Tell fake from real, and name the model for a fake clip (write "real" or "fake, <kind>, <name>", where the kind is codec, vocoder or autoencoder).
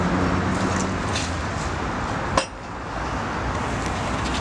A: real